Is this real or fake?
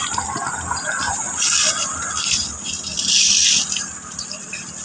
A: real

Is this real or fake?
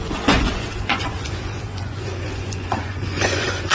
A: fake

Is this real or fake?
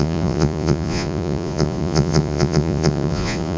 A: fake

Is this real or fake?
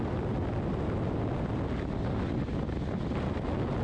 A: real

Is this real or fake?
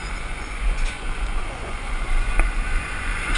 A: fake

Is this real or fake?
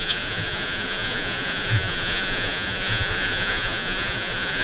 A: fake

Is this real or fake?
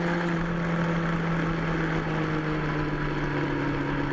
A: real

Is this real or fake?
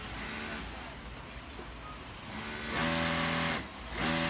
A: real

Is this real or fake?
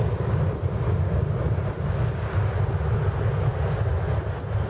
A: real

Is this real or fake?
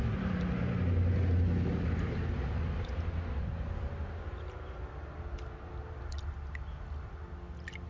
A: real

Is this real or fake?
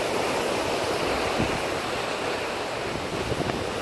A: real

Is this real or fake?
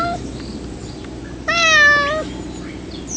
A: real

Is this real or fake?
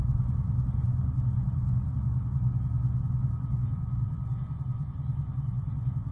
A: fake